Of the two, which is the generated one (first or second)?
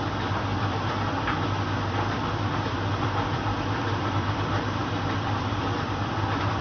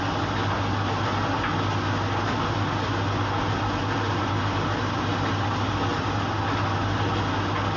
first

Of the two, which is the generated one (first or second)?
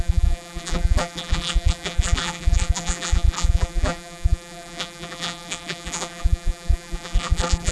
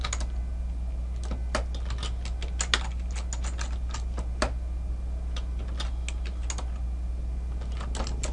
first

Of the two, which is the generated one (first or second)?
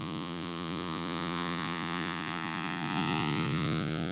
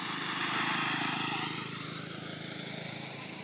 first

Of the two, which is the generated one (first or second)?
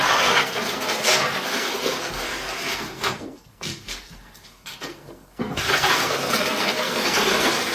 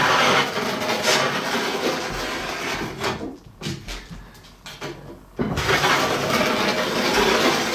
first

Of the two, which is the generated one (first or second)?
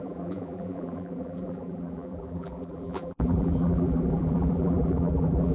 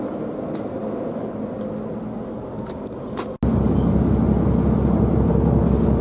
first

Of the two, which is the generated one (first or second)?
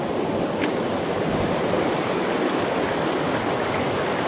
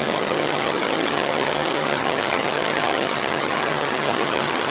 second